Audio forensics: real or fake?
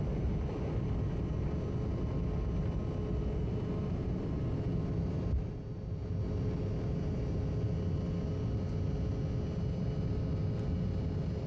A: real